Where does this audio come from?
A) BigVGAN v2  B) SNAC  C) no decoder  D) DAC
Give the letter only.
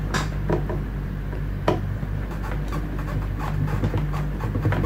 A